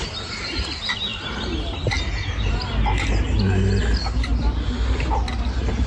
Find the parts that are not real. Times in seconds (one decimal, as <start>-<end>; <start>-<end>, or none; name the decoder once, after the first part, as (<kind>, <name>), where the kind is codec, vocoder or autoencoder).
none